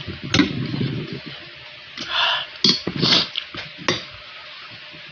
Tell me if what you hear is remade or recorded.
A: recorded